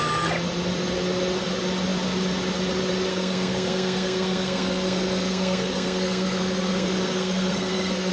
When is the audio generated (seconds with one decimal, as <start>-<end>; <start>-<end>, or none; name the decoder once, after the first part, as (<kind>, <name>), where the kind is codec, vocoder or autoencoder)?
3.1-8.1 (codec, SNAC)